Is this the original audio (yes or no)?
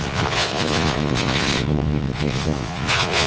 no